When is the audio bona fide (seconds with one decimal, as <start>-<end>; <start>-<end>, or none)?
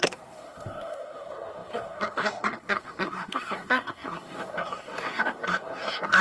none